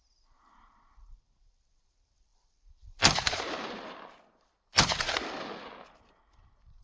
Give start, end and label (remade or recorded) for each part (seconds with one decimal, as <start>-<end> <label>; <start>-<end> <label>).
0.0-6.8 remade